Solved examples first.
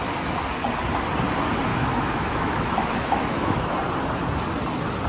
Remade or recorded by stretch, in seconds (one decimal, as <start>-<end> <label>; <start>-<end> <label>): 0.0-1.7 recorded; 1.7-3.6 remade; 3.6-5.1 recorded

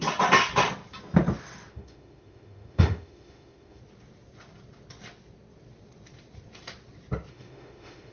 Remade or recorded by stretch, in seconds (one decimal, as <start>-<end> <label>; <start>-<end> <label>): 0.0-1.7 recorded; 1.7-3.8 remade; 3.8-7.3 recorded; 7.3-8.1 remade

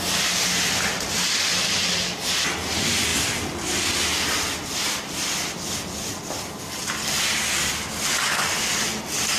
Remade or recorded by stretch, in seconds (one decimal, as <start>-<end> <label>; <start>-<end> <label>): 0.0-9.4 recorded

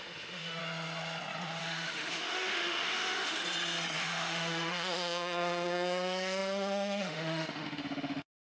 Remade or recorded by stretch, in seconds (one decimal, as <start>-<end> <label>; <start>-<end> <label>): 0.0-0.6 remade; 0.6-1.6 recorded; 1.6-3.4 remade; 3.4-4.0 recorded; 4.0-8.6 remade

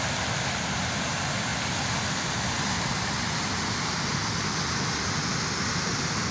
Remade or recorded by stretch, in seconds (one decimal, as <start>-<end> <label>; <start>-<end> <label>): 0.0-6.3 recorded

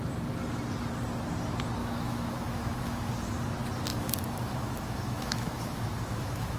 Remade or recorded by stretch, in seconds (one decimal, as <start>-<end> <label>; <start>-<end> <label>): 0.0-1.8 recorded; 1.8-3.1 remade; 3.1-3.9 recorded; 3.9-6.6 remade

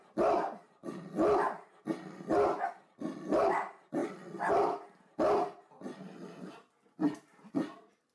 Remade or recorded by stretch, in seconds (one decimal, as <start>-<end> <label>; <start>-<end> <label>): 0.0-8.1 recorded

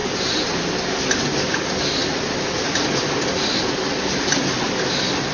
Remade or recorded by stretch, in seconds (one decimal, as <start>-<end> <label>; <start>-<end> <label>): 0.0-5.3 recorded